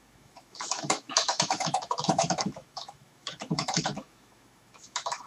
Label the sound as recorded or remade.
remade